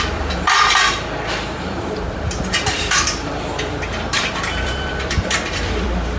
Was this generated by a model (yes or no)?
yes